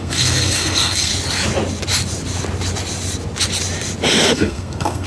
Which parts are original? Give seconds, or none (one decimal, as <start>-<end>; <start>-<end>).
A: 1.1-4.2